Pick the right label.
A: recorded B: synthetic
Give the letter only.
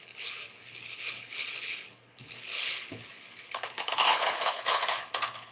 B